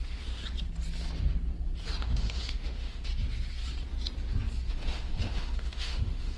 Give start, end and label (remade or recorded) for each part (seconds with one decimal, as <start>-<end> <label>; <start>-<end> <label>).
0.0-0.4 remade; 0.4-2.0 recorded; 2.0-3.1 remade; 3.1-4.7 recorded; 4.7-6.4 remade